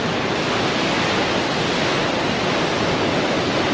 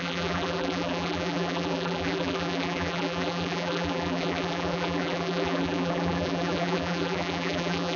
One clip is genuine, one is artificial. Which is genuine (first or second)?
first